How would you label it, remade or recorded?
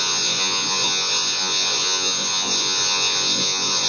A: remade